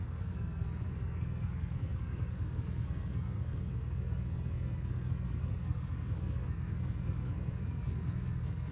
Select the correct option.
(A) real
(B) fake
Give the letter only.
B